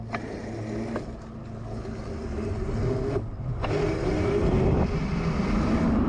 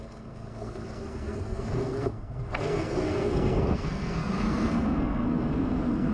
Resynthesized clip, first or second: second